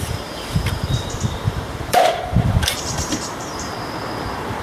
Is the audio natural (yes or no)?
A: no